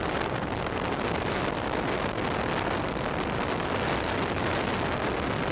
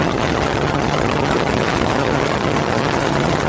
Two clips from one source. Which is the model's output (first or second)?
second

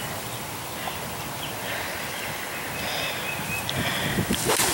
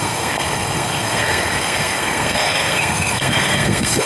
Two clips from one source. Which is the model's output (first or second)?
second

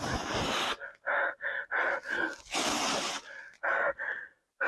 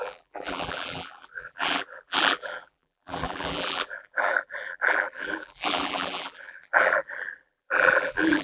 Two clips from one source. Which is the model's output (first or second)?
second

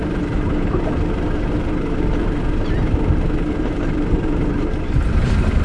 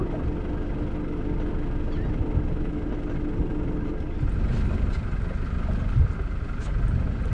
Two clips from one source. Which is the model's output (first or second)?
first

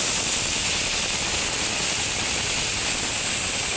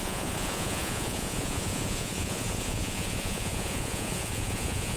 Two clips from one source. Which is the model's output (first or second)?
second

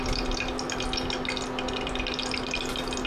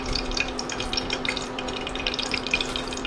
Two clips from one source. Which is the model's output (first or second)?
second